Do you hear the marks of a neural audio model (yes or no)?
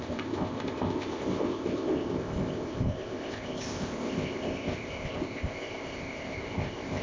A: yes